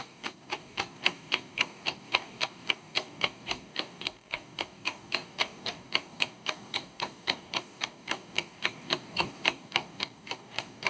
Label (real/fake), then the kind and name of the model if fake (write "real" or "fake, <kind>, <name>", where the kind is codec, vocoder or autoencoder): fake, codec, DAC